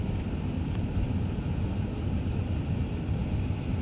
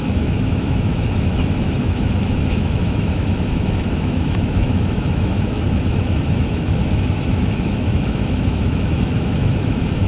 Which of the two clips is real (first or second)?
first